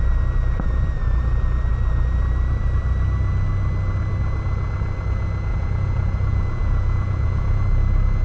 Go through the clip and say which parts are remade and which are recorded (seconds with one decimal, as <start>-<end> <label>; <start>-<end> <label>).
0.0-5.5 recorded; 5.5-7.6 remade; 7.6-8.2 recorded